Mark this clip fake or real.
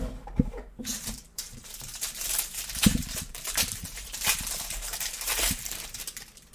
fake